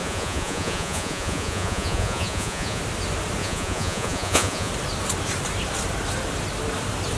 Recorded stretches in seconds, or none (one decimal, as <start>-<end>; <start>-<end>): 2.8-3.4; 4.7-7.2